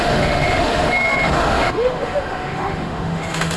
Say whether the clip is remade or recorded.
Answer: remade